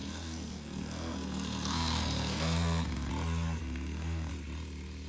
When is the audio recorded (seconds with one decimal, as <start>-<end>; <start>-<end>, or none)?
3.1-3.6; 4.3-5.1